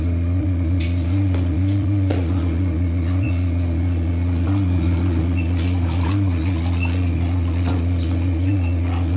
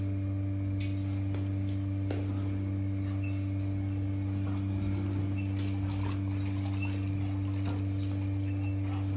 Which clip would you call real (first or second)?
second